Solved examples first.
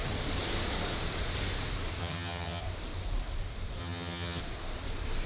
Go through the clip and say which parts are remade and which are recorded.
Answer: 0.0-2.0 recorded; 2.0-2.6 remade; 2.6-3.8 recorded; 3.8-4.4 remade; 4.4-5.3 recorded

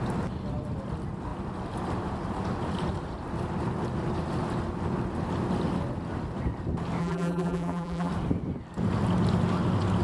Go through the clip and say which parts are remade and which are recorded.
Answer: 0.0-7.0 recorded; 7.0-8.1 remade; 8.1-10.0 recorded

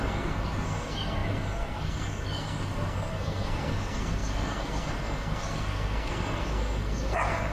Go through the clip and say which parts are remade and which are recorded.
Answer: 0.0-7.5 remade

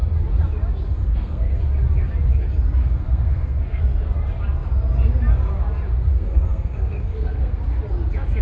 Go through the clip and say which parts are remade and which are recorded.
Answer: 0.0-1.0 recorded; 1.0-1.6 remade; 1.6-2.8 recorded; 2.8-3.8 remade; 3.8-6.1 recorded; 6.1-7.6 remade; 7.6-8.4 recorded

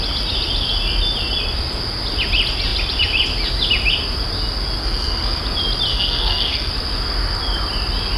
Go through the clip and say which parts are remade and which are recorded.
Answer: 0.0-4.8 recorded; 4.8-5.4 remade; 5.4-5.9 recorded; 5.9-6.7 remade; 6.7-8.2 recorded

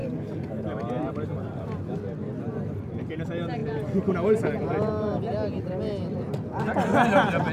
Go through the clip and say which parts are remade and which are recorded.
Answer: 0.0-7.5 recorded

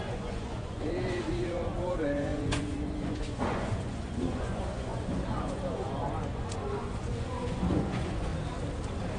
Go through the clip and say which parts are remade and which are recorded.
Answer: 0.0-8.3 remade; 8.3-9.2 recorded

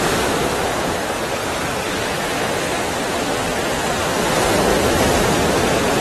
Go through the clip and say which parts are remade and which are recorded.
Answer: 0.0-1.4 recorded; 1.4-3.8 remade; 3.8-4.7 recorded; 4.7-6.0 remade